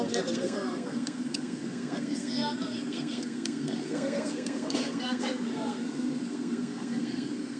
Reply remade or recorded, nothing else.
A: remade